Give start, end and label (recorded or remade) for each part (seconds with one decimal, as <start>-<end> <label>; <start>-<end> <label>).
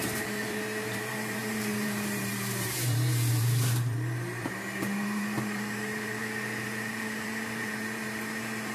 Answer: 0.0-8.7 remade